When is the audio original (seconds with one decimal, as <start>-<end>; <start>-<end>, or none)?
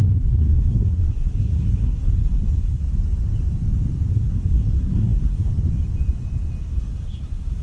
2.8-4.1; 5.5-6.6